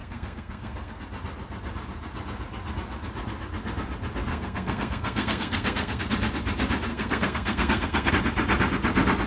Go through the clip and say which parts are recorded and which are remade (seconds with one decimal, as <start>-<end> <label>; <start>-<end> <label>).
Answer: 0.0-1.0 remade; 1.0-4.3 recorded; 4.3-6.0 remade; 6.0-6.9 recorded; 6.9-8.1 remade; 8.1-9.3 recorded